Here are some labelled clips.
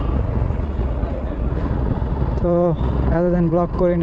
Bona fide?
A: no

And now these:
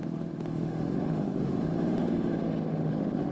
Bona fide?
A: no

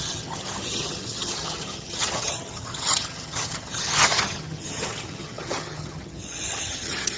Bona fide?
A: no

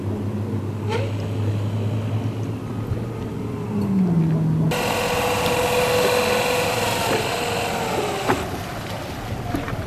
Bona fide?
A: yes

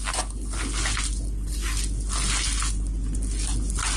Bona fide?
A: yes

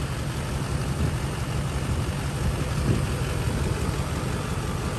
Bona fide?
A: yes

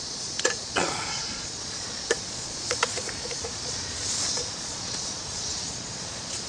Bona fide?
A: no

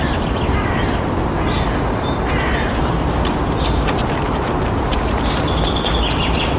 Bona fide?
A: yes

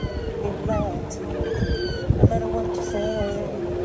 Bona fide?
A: yes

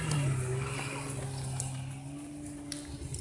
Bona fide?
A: no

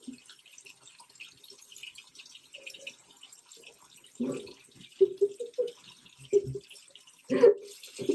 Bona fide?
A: yes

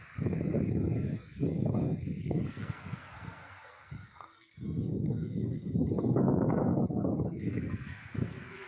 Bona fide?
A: no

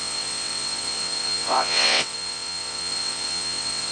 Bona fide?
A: no